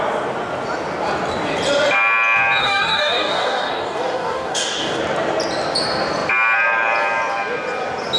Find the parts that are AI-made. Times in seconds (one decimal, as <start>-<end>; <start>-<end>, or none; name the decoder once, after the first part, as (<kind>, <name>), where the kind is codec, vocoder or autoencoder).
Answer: 2.6-5.0 (codec, DAC)